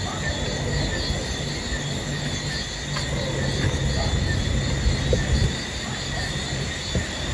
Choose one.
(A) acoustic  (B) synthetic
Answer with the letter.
A